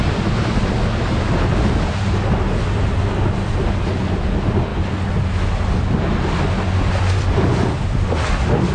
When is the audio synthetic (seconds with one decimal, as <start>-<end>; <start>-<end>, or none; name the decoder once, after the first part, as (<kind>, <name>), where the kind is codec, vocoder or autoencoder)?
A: none